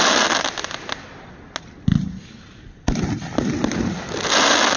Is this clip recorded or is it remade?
recorded